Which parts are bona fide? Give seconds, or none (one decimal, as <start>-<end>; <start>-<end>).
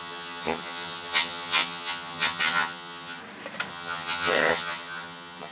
3.2-3.7